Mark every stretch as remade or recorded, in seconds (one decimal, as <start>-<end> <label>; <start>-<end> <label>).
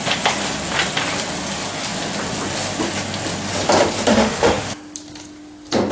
0.0-4.1 recorded; 4.1-4.7 remade; 4.7-5.9 recorded